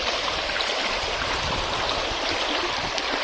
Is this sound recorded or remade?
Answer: remade